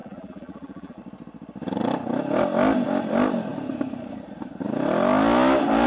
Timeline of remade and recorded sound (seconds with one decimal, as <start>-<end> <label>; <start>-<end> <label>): 0.0-1.0 remade; 1.0-5.9 recorded